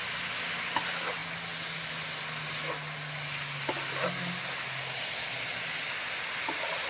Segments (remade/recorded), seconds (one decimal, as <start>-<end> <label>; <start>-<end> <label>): 0.0-6.9 recorded

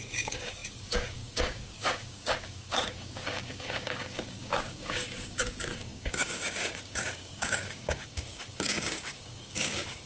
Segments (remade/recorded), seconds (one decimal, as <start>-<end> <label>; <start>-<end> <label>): 0.0-10.1 remade

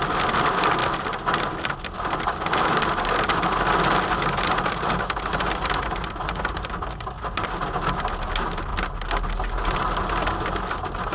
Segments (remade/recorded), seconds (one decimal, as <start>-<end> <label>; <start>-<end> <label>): 0.0-11.1 recorded

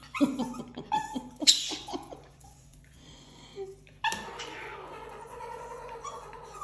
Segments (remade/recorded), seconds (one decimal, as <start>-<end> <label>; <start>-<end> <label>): 0.0-3.5 remade; 3.5-4.3 recorded; 4.3-6.6 remade

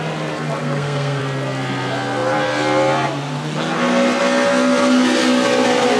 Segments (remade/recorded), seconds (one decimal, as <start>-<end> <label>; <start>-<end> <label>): 0.0-0.6 recorded; 0.6-1.2 remade; 1.2-6.0 recorded

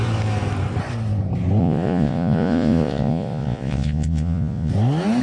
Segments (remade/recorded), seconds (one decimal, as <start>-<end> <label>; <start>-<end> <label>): 0.0-1.6 recorded; 1.6-4.7 remade; 4.7-5.2 recorded

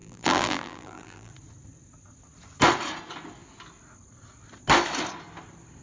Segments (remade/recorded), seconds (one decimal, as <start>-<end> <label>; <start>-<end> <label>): 0.0-1.3 remade; 1.3-5.8 recorded